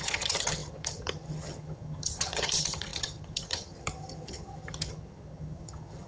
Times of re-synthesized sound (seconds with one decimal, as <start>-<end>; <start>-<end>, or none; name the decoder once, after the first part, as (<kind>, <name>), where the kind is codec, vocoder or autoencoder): 0.0-6.1 (vocoder, HiFi-GAN)